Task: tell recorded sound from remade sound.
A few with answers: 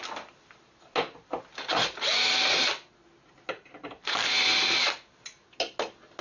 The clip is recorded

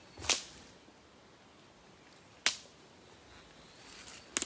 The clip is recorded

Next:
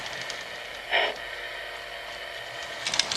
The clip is recorded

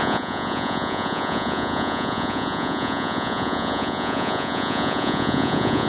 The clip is remade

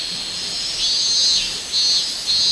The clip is recorded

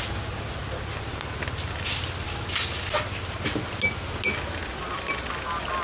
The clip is recorded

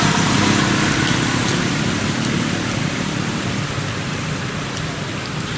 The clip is recorded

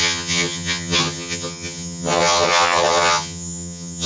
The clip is remade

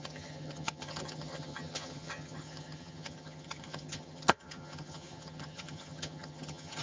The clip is remade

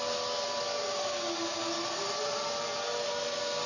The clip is recorded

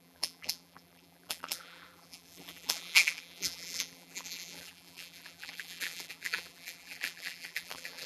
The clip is remade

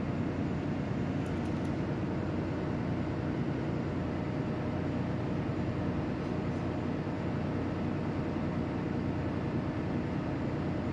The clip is recorded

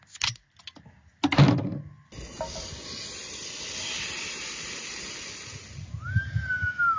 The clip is recorded